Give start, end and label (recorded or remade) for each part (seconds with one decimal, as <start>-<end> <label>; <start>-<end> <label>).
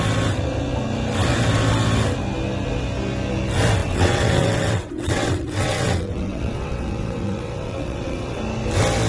0.0-3.8 recorded; 3.8-8.4 remade; 8.4-9.1 recorded